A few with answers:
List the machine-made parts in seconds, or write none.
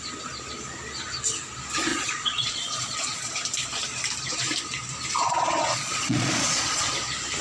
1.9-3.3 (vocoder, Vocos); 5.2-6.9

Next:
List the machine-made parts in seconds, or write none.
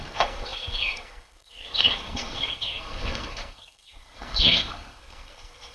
0.0-5.7 (codec, SNAC)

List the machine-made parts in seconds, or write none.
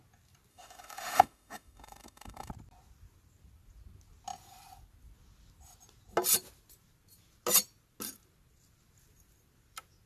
0.5-2.5 (autoencoder, DAC-VAE)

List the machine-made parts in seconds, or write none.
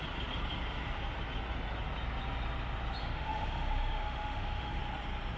3.0-4.8 (autoencoder, DAC-VAE)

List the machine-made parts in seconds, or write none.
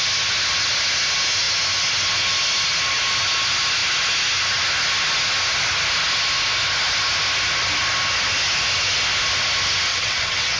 9.9-10.6 (vocoder, WaveNeXt)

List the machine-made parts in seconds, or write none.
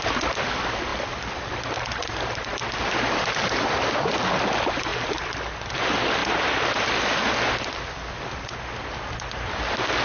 none